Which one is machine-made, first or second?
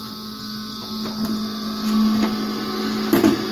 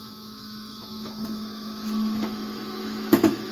second